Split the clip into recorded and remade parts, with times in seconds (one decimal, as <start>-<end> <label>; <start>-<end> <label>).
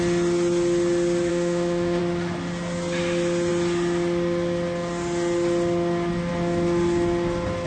0.0-1.3 recorded; 1.3-2.0 remade; 2.0-7.7 recorded